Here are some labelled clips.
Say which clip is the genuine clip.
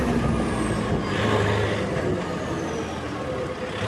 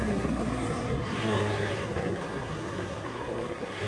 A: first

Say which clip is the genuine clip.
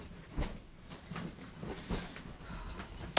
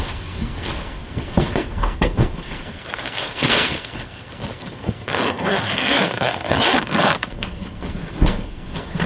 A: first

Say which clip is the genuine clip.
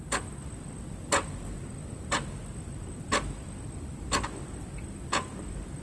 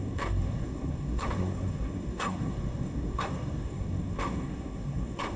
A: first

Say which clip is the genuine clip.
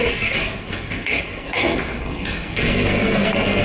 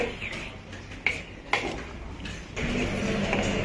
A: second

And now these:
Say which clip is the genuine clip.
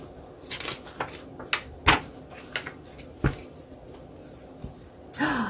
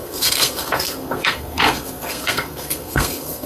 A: first